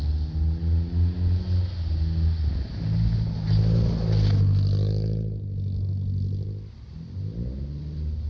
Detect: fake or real real